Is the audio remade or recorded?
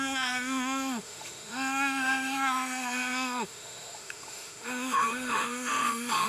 remade